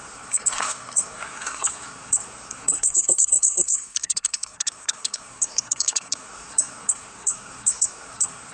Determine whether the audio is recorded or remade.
remade